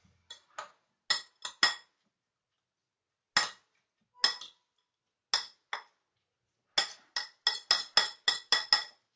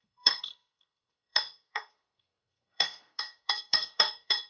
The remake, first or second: second